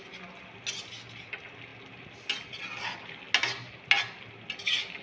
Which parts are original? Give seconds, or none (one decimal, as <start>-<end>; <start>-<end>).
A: 0.0-5.0